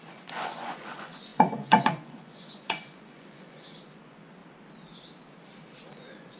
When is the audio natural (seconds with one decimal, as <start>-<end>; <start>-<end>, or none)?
4.4-5.9